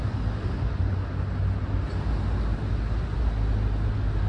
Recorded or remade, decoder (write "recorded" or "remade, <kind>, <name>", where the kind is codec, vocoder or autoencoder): recorded